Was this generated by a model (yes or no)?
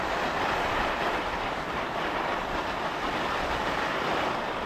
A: yes